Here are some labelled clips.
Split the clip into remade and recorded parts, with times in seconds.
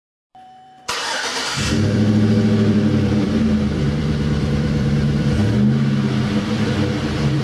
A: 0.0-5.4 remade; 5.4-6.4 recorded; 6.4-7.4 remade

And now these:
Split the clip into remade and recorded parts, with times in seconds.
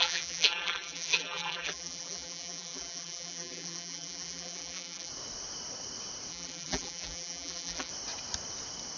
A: 0.0-5.1 remade; 5.1-6.3 recorded; 6.3-7.9 remade; 7.9-9.0 recorded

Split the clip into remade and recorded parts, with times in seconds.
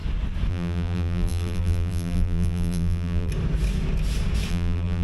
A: 0.0-0.5 recorded; 0.5-3.3 remade; 3.3-4.5 recorded; 4.5-5.0 remade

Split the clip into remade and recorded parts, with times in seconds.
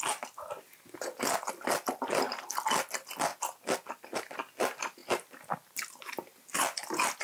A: 0.0-7.2 recorded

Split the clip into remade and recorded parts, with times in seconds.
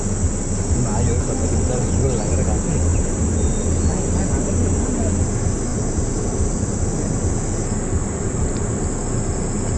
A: 0.0-2.9 recorded; 2.9-3.6 remade; 3.6-5.7 recorded; 5.7-6.8 remade; 6.8-8.0 recorded; 8.0-8.8 remade; 8.8-9.8 recorded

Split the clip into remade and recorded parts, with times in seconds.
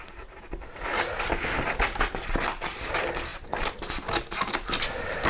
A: 0.0-3.3 recorded; 3.3-4.1 remade; 4.1-5.3 recorded